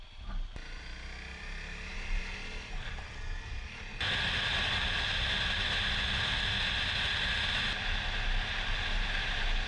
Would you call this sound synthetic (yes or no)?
no